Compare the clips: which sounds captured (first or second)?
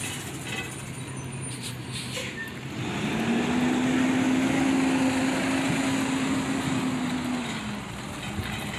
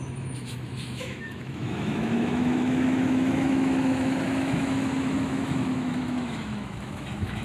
first